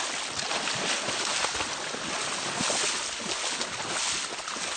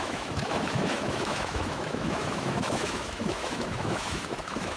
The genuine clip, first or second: first